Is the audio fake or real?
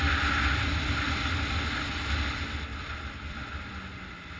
real